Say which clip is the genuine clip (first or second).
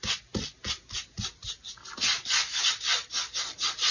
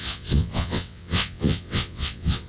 first